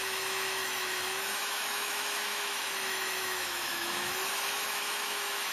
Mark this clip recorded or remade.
remade